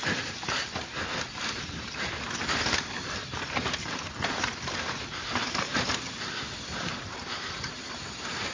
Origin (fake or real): fake